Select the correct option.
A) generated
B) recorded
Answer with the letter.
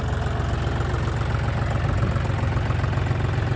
B